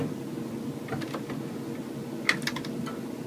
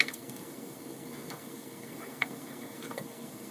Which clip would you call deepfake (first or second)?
second